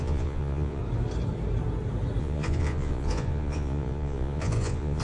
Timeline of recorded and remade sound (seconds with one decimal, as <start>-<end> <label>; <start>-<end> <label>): 0.0-0.8 remade; 0.8-2.2 recorded; 2.2-5.0 remade

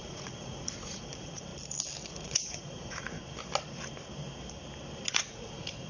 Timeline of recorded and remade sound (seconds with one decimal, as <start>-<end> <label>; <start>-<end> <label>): 0.0-1.5 remade; 1.5-2.0 recorded; 2.0-3.2 remade; 3.2-5.1 recorded; 5.1-5.9 remade